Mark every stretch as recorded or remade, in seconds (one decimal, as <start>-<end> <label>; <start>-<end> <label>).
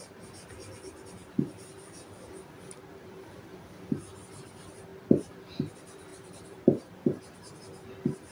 0.0-1.2 recorded; 1.2-1.9 remade; 1.9-2.9 recorded; 2.9-3.6 remade; 3.6-6.1 recorded; 6.1-7.6 remade; 7.6-8.3 recorded